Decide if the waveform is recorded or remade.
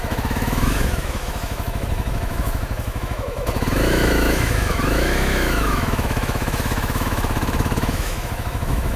remade